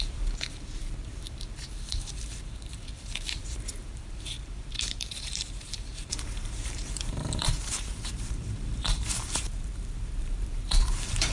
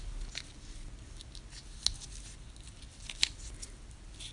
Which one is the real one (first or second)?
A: second